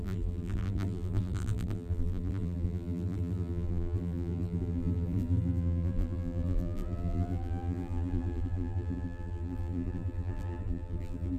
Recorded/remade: remade